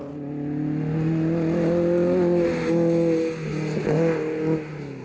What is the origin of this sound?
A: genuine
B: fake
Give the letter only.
A